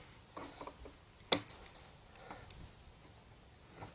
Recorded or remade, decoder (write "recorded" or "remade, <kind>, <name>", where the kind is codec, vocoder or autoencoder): recorded